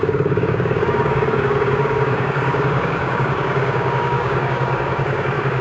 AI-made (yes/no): yes